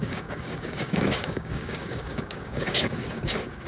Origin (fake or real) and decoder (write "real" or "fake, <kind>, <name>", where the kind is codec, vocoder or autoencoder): fake, codec, DAC